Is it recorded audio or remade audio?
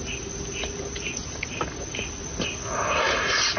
recorded